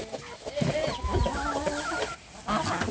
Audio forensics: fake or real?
real